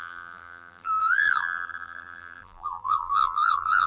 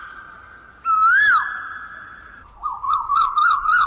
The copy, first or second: first